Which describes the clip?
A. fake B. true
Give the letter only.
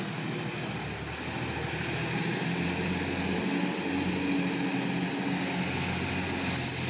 B